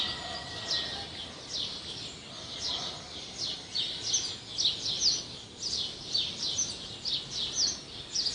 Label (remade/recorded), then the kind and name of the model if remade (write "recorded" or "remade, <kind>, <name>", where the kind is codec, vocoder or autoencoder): recorded